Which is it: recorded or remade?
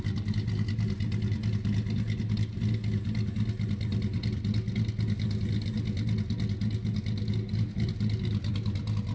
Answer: recorded